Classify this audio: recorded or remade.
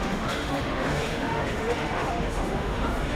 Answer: remade